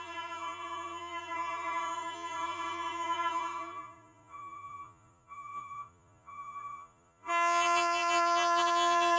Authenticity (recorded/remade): remade